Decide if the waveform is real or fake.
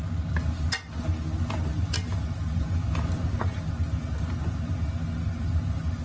real